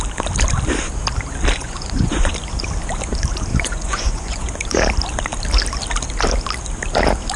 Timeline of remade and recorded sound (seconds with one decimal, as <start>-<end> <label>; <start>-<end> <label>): 0.0-1.6 recorded; 1.6-2.3 remade; 2.3-3.5 recorded; 3.5-4.5 remade; 4.5-7.4 recorded